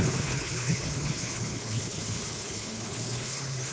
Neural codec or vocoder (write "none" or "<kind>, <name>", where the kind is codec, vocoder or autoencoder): codec, HILCodec